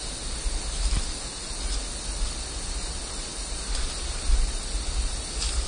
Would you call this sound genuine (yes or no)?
yes